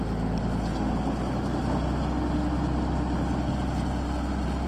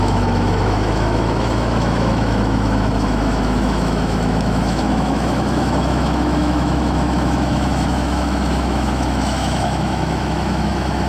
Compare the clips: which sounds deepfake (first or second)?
second